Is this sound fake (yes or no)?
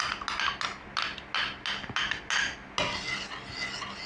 no